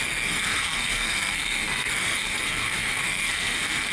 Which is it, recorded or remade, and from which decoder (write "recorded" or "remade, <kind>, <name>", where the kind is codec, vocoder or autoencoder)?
remade, codec, SNAC